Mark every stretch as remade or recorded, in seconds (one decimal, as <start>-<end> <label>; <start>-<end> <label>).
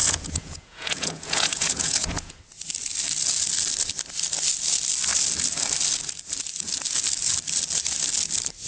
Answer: 0.0-2.4 remade; 2.4-8.7 recorded